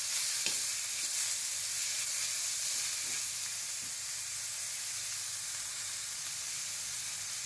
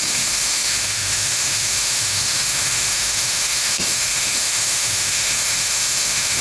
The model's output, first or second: second